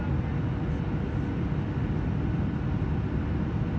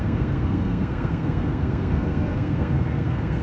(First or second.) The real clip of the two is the first